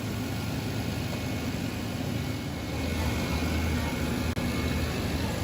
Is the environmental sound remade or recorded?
recorded